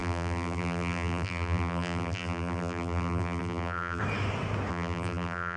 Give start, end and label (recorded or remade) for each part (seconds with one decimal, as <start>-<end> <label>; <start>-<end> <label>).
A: 0.0-4.0 remade; 4.0-4.7 recorded; 4.7-5.6 remade